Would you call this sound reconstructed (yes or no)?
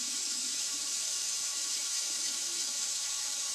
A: yes